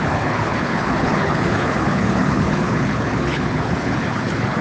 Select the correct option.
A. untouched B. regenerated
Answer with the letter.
B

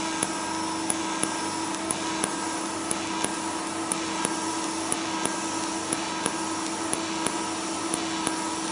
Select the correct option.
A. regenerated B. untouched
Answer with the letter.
B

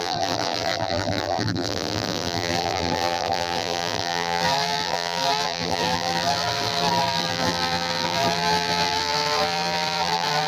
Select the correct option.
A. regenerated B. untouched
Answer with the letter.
A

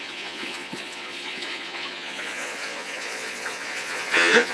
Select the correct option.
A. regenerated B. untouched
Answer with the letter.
A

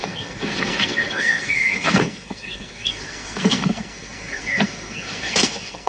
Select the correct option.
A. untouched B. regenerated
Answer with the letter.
B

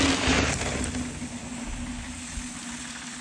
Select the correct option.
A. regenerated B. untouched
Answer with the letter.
B